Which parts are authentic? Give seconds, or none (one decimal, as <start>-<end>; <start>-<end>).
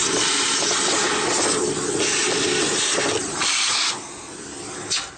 0.7-3.2; 4.2-5.2